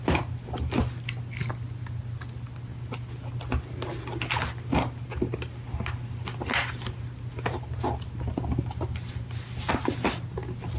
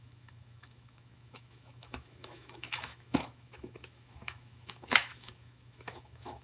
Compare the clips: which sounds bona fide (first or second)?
first